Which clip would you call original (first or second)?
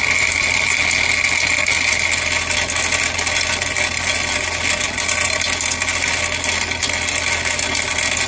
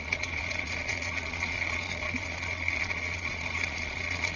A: first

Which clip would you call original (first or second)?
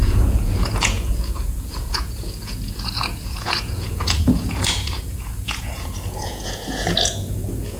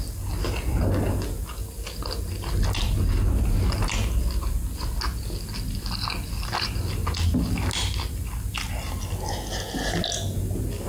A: second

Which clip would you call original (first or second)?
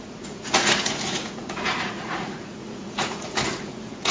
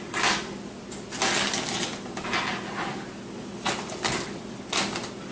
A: second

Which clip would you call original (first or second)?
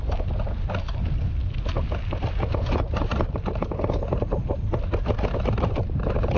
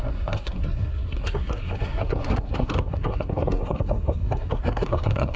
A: first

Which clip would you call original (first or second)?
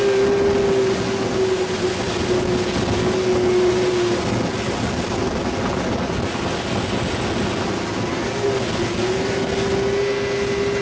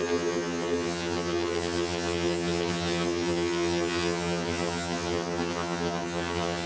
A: first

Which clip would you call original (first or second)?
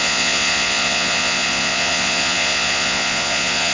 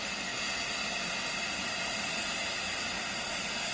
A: second